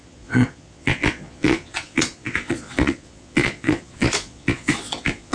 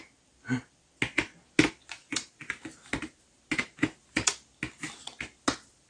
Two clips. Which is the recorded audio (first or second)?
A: second